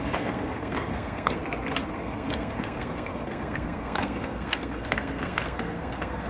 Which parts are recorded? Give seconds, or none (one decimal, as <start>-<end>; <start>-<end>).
1.4-1.9